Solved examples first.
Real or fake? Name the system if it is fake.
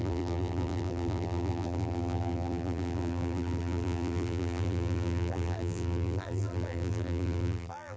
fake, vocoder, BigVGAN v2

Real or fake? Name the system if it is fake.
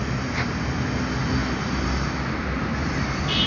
real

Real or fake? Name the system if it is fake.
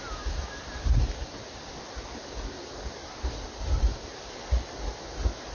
real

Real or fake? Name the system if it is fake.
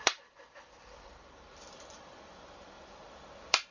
fake, vocoder, BigVGAN v2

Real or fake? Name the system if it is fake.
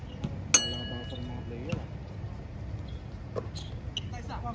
real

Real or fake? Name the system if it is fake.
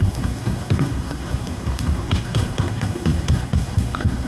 fake, codec, SNAC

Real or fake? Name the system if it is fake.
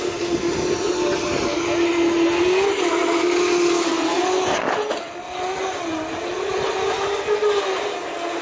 real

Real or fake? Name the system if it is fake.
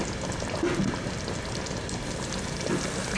real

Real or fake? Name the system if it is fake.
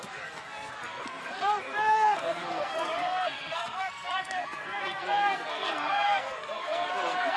fake, codec, SNAC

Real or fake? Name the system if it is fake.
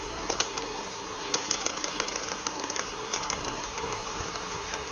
fake, codec, SNAC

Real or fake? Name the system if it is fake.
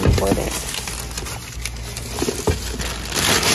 real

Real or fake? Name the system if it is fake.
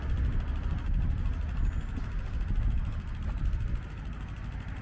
real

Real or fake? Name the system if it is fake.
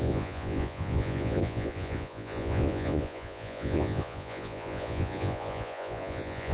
fake, vocoder, Vocos